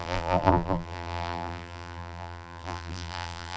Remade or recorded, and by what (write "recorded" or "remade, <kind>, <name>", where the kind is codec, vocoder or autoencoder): remade, vocoder, BigVGAN v2